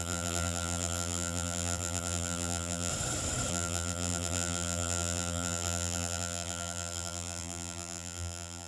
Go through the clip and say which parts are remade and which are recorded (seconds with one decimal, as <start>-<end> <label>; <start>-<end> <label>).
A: 0.0-2.9 remade; 2.9-3.5 recorded; 3.5-8.7 remade